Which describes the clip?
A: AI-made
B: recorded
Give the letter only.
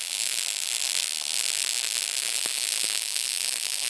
B